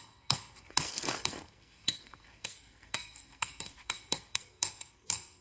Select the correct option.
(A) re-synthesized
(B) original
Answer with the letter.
A